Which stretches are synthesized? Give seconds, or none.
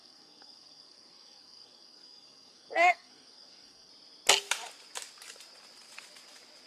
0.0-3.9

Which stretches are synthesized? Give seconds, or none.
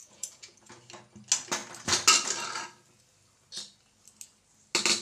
0.0-0.7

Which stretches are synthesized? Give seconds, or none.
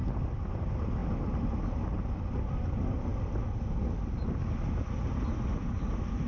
none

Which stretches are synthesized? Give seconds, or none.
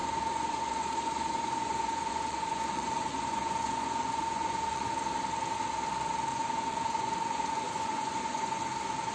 0.0-4.9; 6.3-8.7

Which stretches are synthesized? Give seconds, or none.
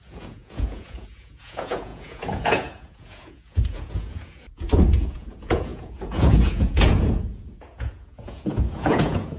0.0-9.4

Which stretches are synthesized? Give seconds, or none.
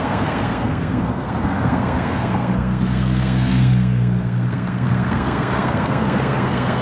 0.0-6.8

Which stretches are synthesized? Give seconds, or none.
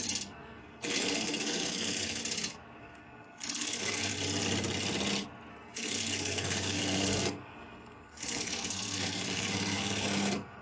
0.0-2.2; 2.8-4.1; 5.5-10.6